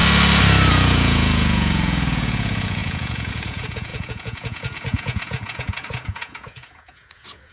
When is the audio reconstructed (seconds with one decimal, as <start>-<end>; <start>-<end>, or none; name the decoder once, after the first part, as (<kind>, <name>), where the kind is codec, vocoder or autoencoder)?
0.7-7.5 (vocoder, Vocos)